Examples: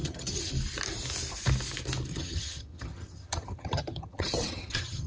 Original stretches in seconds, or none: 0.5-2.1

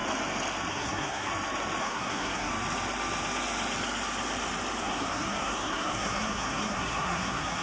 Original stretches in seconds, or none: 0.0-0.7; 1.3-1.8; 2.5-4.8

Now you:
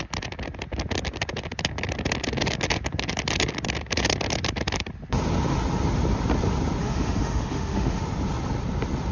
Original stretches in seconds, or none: 0.0-6.8; 8.0-9.1

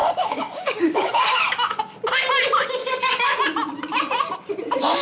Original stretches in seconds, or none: 1.8-2.8; 3.4-5.0

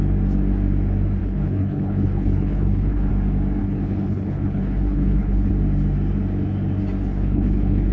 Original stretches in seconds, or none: 0.0-1.2; 3.1-3.6; 5.5-7.1

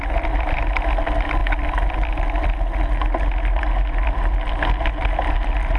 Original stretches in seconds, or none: 0.0-5.8